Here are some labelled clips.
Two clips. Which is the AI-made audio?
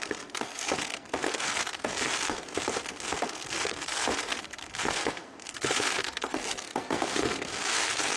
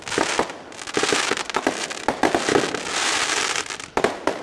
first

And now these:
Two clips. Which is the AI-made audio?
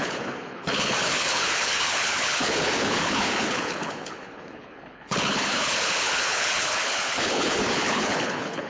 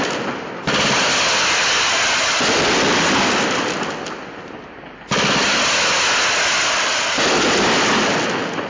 first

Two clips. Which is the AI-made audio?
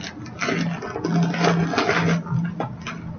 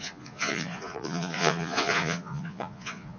second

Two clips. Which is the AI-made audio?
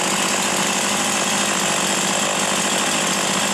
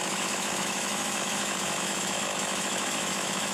second